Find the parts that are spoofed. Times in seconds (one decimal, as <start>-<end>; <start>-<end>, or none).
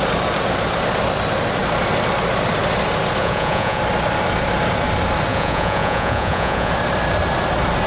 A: 3.2-3.8; 5.3-6.7